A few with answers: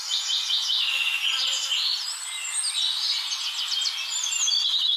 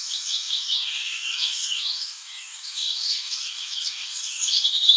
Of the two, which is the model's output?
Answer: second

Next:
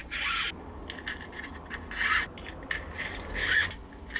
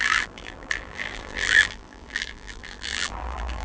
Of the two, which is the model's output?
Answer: second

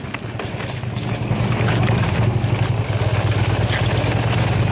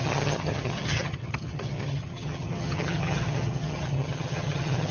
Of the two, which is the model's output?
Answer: second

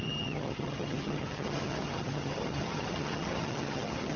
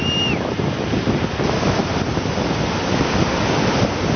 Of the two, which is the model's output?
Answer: first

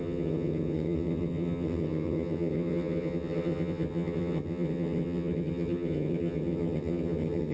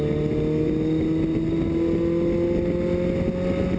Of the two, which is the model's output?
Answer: first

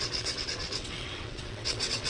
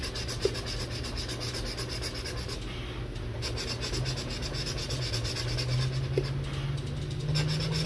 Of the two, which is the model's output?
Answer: first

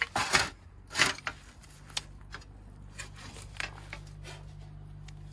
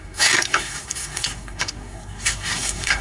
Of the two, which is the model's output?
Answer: second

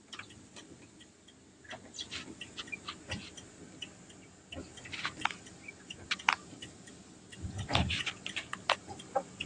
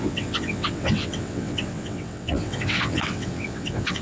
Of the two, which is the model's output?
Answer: second